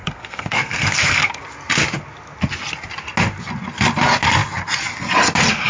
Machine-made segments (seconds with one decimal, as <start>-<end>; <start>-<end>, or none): 0.0-1.4